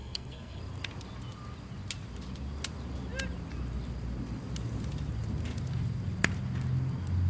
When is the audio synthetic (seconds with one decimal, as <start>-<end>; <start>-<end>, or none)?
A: 0.0-0.6